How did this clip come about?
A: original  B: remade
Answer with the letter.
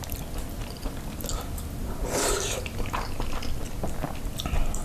A